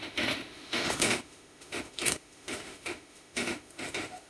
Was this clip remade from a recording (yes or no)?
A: yes